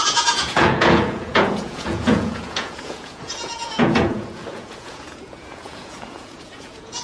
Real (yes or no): no